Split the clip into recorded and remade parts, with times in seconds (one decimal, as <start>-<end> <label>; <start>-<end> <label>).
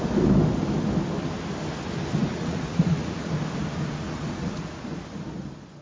0.0-2.2 recorded; 2.2-3.3 remade; 3.3-3.9 recorded; 3.9-4.8 remade; 4.8-5.8 recorded